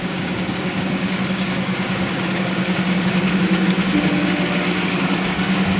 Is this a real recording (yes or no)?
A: no